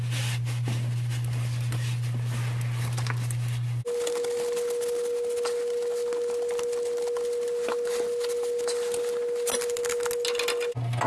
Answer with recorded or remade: recorded